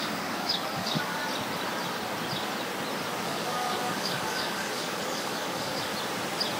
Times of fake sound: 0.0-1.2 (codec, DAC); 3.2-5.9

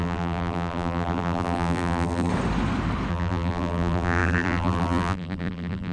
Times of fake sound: 0.0-2.3 (vocoder, BigVGAN v2); 3.1-5.9